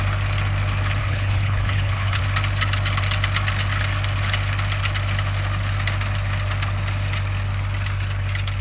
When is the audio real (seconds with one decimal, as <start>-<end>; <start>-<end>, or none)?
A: 0.0-1.0; 2.2-8.6